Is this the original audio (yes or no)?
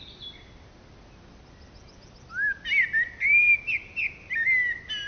yes